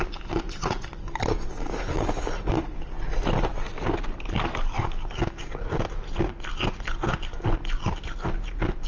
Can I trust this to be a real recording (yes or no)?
yes